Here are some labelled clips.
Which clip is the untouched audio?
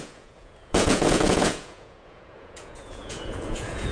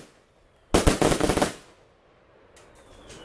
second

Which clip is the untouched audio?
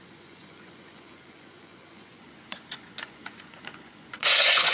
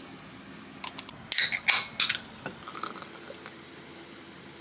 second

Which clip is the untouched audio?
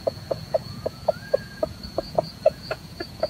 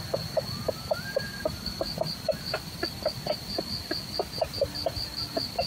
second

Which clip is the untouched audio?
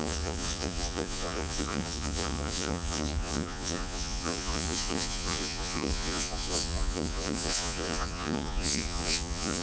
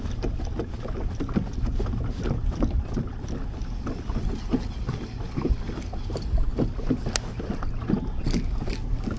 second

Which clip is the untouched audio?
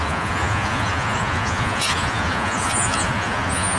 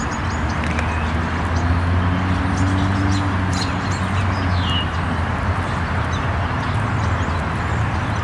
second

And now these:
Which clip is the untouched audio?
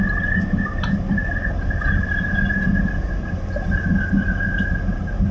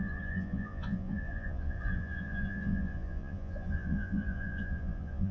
first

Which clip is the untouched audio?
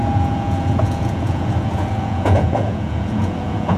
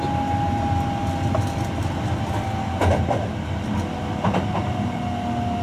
second